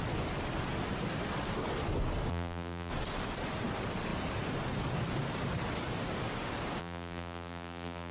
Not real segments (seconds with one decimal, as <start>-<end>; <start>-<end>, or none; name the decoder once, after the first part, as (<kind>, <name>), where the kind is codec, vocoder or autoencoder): 2.3-2.9 (vocoder, BigVGAN v2); 6.8-8.1